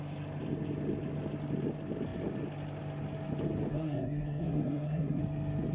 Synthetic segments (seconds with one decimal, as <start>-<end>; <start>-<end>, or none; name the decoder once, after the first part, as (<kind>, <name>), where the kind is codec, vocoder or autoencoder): 3.7-5.2 (codec, SNAC)

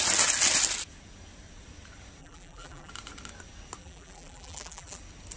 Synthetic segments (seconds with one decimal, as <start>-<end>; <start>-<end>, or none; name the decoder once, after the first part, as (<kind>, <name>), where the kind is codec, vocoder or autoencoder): 2.2-2.9 (vocoder, BigVGAN v2); 3.8-5.0

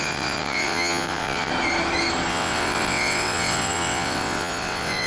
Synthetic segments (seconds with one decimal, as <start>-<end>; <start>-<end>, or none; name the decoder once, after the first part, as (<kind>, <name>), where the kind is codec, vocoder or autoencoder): 0.0-1.5 (vocoder, WaveNeXt); 2.3-5.1

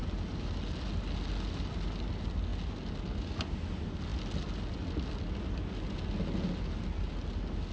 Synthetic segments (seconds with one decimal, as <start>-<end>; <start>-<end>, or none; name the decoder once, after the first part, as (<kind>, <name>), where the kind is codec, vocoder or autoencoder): none

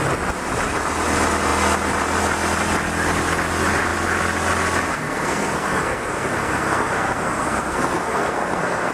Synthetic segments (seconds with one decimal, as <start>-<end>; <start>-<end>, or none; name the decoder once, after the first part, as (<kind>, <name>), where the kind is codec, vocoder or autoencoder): 4.9-8.9 (codec, SNAC)